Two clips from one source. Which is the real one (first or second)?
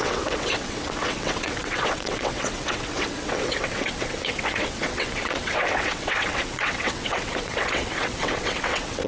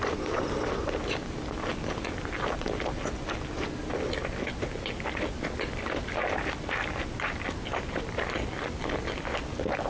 second